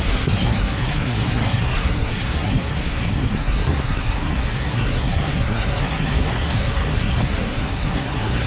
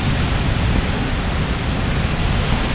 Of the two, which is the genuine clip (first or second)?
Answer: second